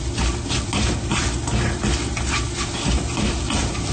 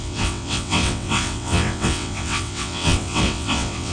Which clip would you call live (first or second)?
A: first